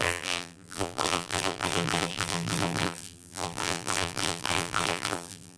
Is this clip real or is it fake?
fake